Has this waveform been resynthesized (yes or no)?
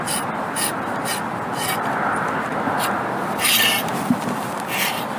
no